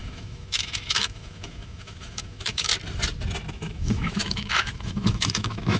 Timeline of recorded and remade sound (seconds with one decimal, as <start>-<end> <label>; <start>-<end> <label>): 0.0-2.7 remade; 2.7-3.5 recorded; 3.5-5.8 remade